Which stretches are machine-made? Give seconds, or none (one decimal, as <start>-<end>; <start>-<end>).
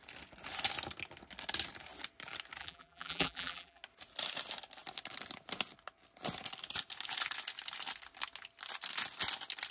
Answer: 2.6-3.8